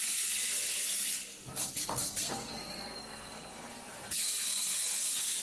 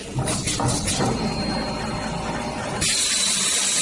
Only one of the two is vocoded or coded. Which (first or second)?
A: first